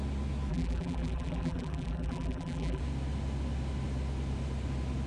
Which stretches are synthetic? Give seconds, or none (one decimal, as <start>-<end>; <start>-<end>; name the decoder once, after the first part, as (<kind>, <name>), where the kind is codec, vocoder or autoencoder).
0.5-2.8 (vocoder, BigVGAN v2)